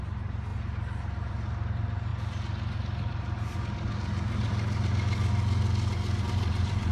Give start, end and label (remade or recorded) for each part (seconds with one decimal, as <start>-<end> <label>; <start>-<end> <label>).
0.0-0.5 remade; 0.5-1.7 recorded; 1.7-2.1 remade; 2.1-6.2 recorded; 6.2-6.9 remade